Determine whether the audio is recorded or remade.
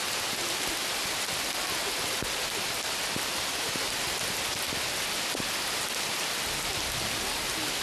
recorded